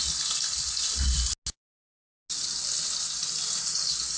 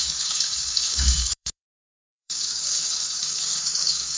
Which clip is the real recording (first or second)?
first